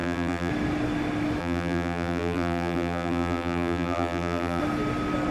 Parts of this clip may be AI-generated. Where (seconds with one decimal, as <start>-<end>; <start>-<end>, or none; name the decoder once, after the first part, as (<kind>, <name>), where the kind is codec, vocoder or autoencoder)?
0.0-0.5 (vocoder, BigVGAN v2); 1.4-4.6